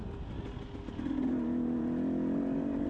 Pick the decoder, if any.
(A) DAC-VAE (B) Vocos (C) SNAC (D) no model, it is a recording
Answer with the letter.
D